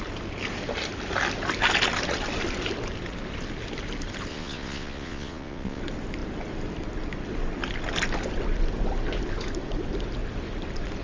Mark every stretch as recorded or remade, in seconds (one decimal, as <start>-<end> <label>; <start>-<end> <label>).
0.0-4.3 recorded; 4.3-5.8 remade; 5.8-11.0 recorded